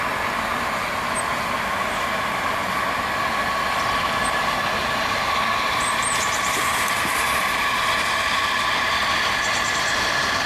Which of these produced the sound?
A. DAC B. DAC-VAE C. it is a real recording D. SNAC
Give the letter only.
C